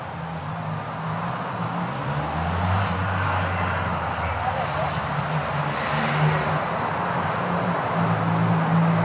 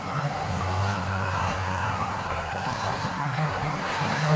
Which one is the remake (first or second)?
second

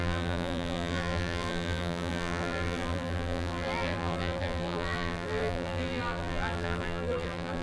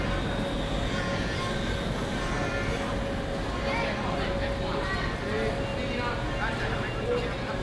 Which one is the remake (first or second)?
first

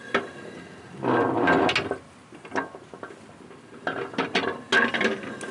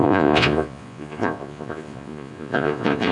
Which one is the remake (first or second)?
second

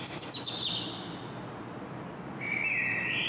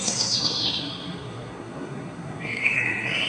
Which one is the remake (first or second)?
second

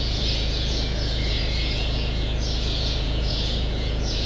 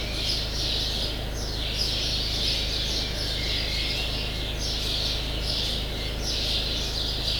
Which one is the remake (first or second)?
first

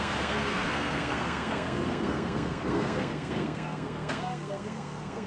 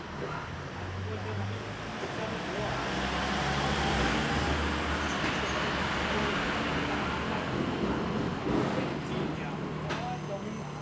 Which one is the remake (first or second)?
first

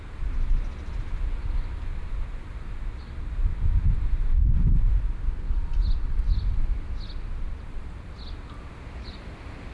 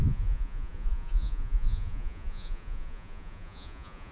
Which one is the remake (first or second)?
second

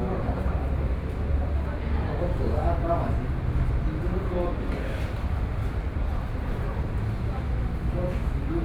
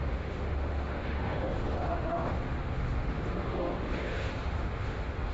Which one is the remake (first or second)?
second